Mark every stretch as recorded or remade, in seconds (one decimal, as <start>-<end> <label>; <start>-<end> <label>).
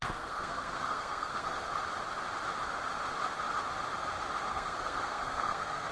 0.0-1.7 remade; 1.7-4.5 recorded; 4.5-5.9 remade